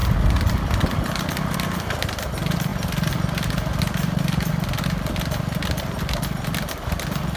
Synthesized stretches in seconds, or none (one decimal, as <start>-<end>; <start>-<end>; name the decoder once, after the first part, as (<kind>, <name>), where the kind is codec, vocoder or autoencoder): none

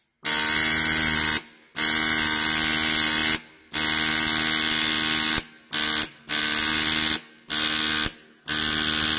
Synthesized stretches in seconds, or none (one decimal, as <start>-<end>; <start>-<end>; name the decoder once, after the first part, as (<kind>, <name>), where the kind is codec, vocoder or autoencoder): none

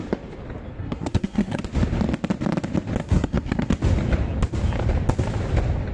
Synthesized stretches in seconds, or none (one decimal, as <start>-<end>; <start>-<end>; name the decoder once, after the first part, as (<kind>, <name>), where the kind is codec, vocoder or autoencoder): 0.8-1.6 (codec, SNAC); 3.0-3.7

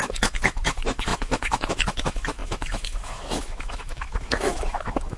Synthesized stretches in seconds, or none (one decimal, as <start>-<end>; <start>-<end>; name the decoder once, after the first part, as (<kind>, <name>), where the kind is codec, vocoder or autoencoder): 0.0-5.2 (autoencoder, DAC-VAE)